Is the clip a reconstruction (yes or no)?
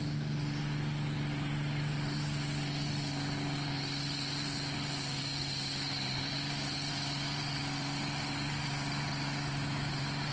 no